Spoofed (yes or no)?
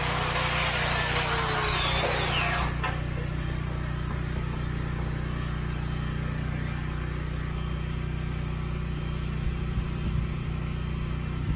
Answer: no